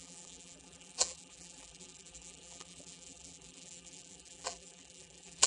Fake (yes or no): yes